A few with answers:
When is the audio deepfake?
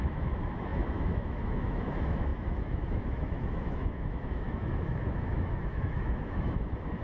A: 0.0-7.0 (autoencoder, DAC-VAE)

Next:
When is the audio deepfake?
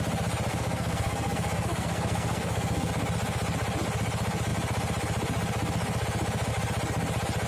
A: 0.5-2.9 (codec, SNAC)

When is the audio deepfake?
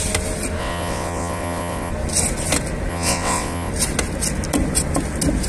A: 0.6-1.9 (vocoder, WaveNeXt); 2.9-3.7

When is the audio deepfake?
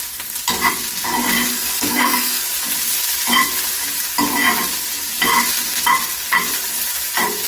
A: 1.5-2.4 (codec, SNAC)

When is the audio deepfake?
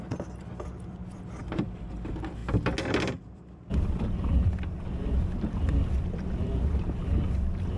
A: 0.0-2.4 (vocoder, BigVGAN v2); 3.2-7.8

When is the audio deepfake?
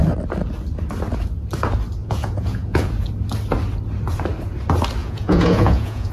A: 2.0-2.9 (vocoder, Vocos); 5.0-6.1